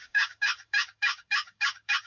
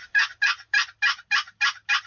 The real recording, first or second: second